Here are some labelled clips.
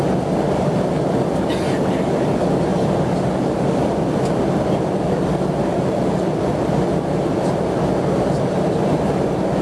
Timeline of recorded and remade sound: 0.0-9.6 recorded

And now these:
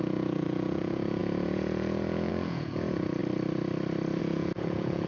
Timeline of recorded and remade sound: 0.0-3.2 remade; 3.2-4.2 recorded; 4.2-5.1 remade

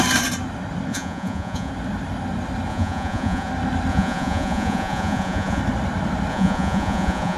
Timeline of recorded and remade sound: 0.0-0.9 recorded; 0.9-1.7 remade; 1.7-2.7 recorded; 2.7-3.5 remade; 3.5-3.9 recorded; 3.9-5.6 remade; 5.6-6.3 recorded; 6.3-7.4 remade

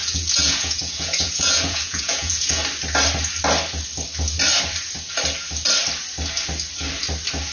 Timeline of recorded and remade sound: 0.0-2.6 remade; 2.6-7.5 recorded

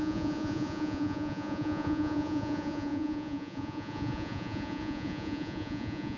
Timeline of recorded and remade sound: 0.0-6.2 remade

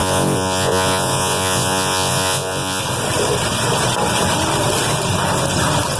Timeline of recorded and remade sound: 0.0-2.8 remade; 2.8-6.0 recorded

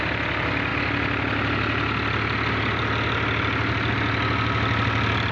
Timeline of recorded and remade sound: 0.0-5.3 recorded

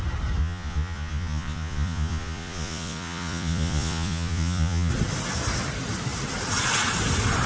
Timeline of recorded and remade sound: 0.0-0.4 recorded; 0.4-4.9 remade; 4.9-7.5 recorded